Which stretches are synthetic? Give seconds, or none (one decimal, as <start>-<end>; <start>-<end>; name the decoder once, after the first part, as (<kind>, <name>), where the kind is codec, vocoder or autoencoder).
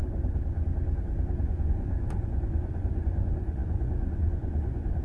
1.4-5.0 (vocoder, Vocos)